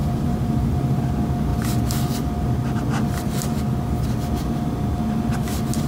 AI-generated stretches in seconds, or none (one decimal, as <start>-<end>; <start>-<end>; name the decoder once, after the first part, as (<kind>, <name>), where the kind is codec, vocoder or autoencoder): 0.0-1.1 (vocoder, BigVGAN v2)